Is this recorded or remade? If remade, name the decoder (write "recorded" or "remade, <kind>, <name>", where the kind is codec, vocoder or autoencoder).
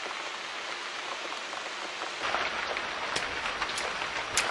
recorded